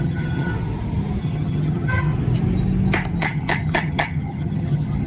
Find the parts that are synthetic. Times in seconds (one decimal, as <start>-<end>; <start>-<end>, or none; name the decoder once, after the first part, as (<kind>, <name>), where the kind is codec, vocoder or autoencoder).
0.0-0.5 (vocoder, HiFi-GAN); 1.2-2.1; 3.2-5.1